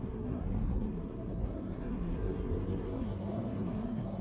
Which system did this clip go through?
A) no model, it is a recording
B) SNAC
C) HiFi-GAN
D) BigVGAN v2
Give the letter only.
B